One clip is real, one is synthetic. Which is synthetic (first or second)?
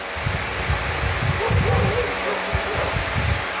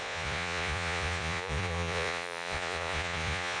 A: second